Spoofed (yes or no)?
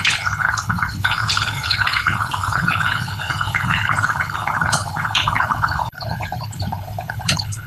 yes